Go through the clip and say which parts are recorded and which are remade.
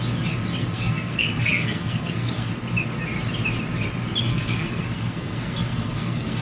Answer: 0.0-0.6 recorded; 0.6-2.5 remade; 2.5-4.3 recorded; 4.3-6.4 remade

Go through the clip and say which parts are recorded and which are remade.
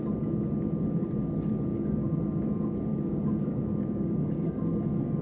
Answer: 0.0-1.7 recorded; 1.7-2.2 remade; 2.2-2.9 recorded; 2.9-4.8 remade; 4.8-5.2 recorded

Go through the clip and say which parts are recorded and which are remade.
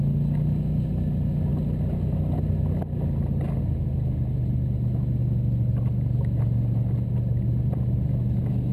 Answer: 0.0-8.7 recorded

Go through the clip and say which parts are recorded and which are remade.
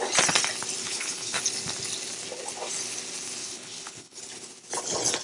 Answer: 0.0-0.8 recorded; 0.8-1.4 remade; 1.4-3.4 recorded; 3.4-4.2 remade; 4.2-5.2 recorded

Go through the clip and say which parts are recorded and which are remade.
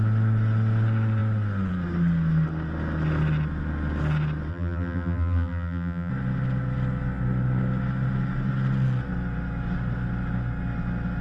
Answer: 0.0-4.5 recorded; 4.5-6.1 remade; 6.1-11.2 recorded